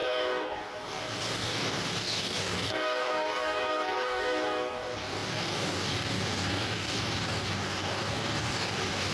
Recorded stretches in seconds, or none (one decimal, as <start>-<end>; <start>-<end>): none